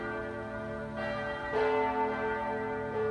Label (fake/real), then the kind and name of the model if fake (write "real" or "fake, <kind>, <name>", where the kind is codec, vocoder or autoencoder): real